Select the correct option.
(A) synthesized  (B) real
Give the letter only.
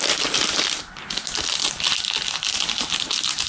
B